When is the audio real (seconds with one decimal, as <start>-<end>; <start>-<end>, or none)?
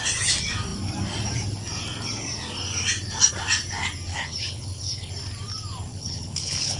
0.0-4.1; 5.1-5.9